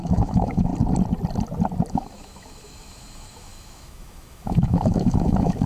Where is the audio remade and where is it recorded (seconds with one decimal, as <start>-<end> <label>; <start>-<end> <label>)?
0.0-0.7 remade; 0.7-1.9 recorded; 1.9-5.7 remade